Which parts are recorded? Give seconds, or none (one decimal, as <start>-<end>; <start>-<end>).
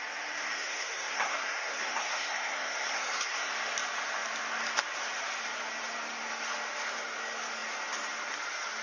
0.0-0.5; 3.5-8.8